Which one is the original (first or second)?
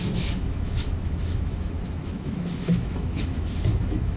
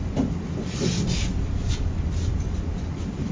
second